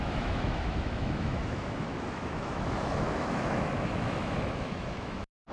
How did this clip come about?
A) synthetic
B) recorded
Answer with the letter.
A